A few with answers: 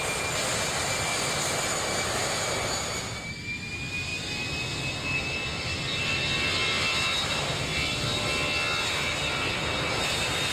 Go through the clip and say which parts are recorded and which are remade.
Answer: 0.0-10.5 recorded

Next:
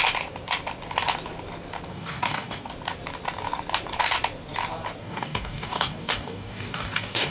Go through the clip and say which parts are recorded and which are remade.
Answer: 0.0-1.9 recorded; 1.9-2.7 remade; 2.7-5.0 recorded; 5.0-7.3 remade

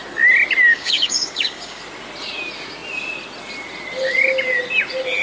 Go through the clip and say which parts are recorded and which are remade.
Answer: 0.0-0.7 recorded; 0.7-1.8 remade; 1.8-5.2 recorded

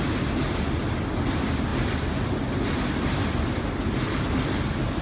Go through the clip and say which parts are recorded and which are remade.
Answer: 0.0-5.0 recorded

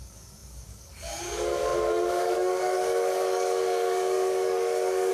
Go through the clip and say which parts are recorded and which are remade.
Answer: 0.0-5.1 remade

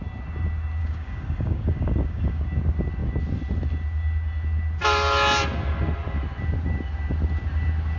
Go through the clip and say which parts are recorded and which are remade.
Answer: 0.0-0.8 recorded; 0.8-2.4 remade; 2.4-8.0 recorded

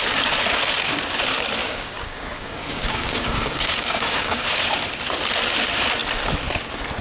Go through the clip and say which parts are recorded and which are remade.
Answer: 0.0-1.6 recorded; 1.6-4.5 remade; 4.5-7.0 recorded

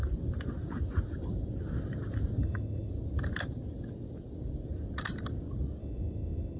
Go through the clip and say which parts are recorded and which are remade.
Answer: 0.0-2.4 recorded; 2.4-2.9 remade; 2.9-5.8 recorded; 5.8-6.6 remade